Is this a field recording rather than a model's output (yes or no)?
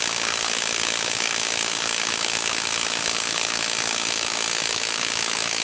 no